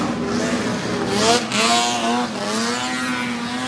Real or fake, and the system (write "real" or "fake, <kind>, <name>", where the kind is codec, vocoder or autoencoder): real